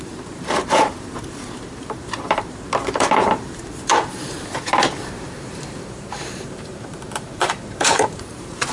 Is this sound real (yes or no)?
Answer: no